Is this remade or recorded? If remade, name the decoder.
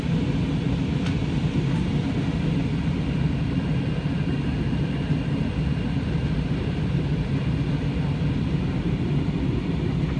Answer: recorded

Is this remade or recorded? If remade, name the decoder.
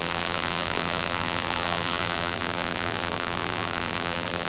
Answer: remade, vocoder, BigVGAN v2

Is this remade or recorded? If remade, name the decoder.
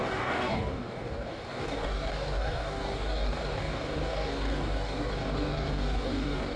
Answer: remade, codec, DAC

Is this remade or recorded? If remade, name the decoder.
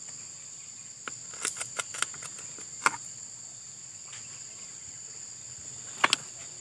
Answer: recorded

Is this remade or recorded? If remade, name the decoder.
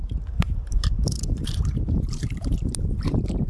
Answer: remade, vocoder, BigVGAN v2